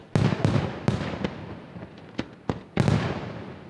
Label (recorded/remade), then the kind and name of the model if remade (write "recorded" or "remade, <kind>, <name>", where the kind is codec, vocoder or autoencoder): recorded